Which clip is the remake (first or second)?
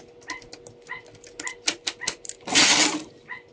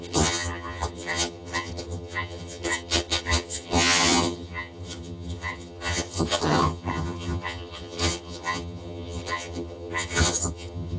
second